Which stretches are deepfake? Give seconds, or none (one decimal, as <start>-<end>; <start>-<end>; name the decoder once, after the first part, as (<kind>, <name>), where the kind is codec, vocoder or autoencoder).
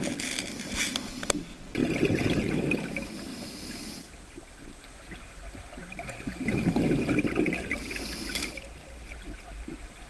1.8-2.5 (vocoder, BigVGAN v2); 3.3-4.6; 8.8-9.4